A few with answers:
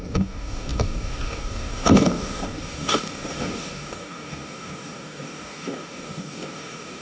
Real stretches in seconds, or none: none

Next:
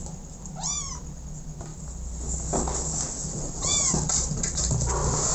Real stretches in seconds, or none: 1.0-1.7; 2.2-3.2; 4.7-5.3

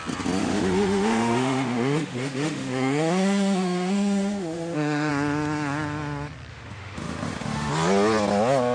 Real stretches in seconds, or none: 0.0-0.4; 5.1-6.5; 7.7-8.7